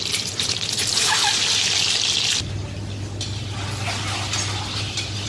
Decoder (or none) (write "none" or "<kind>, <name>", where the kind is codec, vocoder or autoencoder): none